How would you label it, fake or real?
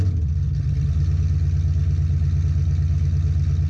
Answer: real